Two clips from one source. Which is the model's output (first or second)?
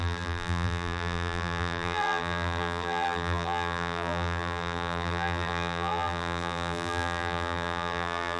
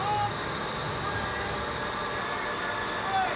first